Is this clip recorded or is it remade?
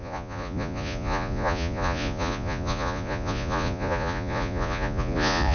remade